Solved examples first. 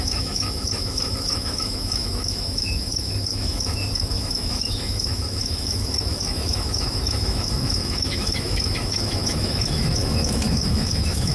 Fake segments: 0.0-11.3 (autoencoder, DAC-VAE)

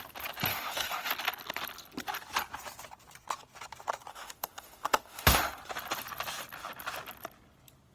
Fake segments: 0.5-1.1 (autoencoder, DAC-VAE); 4.1-5.6